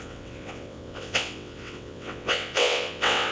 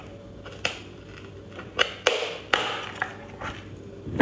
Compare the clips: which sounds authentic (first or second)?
second